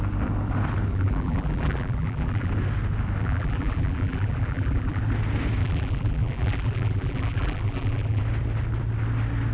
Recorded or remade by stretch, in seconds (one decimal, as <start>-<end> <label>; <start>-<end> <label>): 0.0-0.9 recorded; 0.9-2.5 remade; 2.5-3.2 recorded; 3.2-5.0 remade; 5.0-5.6 recorded; 5.6-8.2 remade; 8.2-9.5 recorded